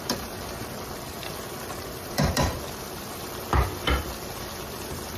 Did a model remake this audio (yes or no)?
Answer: yes